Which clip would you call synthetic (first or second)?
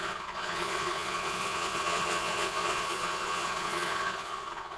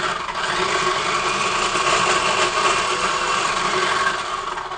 first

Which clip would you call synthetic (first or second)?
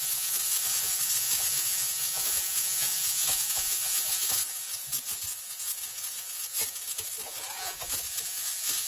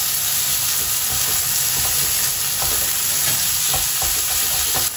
first